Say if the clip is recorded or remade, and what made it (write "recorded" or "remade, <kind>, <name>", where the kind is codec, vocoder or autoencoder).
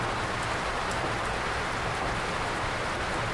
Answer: recorded